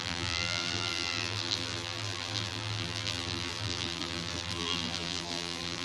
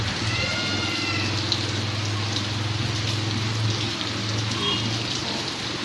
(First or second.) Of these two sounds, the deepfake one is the first